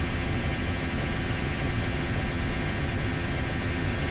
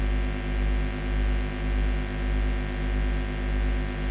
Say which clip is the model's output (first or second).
first